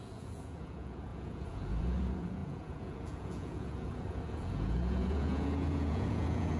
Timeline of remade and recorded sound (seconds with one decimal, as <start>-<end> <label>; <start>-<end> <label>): 0.0-6.6 remade